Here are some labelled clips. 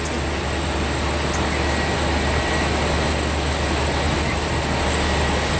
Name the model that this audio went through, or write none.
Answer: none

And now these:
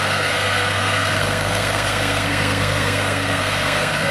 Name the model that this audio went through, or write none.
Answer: codec, SNAC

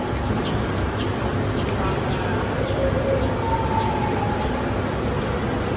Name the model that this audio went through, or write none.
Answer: none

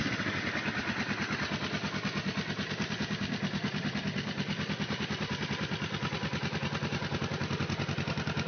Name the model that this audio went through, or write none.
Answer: none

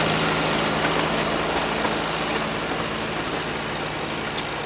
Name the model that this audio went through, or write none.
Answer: none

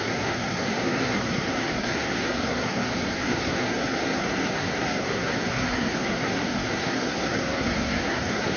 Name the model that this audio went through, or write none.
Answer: codec, SNAC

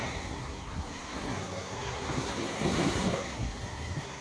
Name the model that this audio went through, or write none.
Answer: codec, SNAC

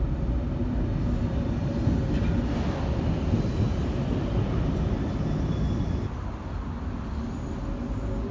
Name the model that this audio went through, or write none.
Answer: none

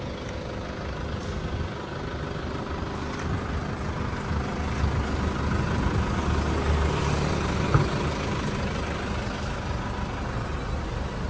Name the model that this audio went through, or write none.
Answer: none